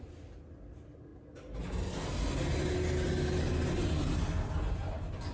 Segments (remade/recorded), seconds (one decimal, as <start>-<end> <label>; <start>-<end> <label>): 0.0-5.3 recorded